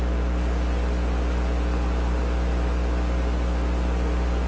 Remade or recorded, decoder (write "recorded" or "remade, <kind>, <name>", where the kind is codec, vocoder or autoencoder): recorded